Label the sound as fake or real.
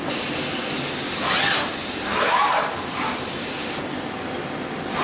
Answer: real